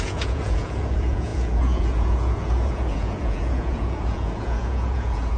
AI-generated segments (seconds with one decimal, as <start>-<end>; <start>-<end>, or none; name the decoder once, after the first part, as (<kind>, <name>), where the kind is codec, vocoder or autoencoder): 0.0-5.4 (vocoder, Vocos)